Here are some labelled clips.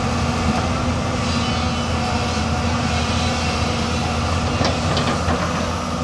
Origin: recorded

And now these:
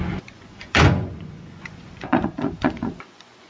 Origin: remade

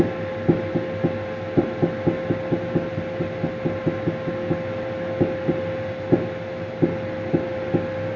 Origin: recorded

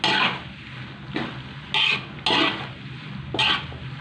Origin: recorded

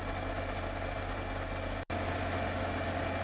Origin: recorded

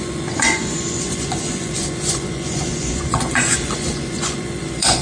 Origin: remade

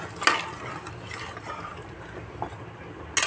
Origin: recorded